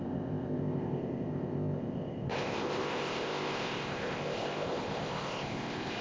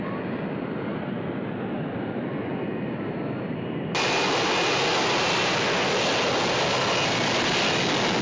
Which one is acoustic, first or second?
second